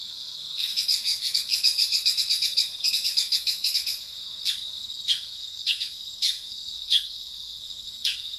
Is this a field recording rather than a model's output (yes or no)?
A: no